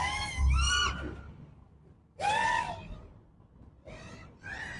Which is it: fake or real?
real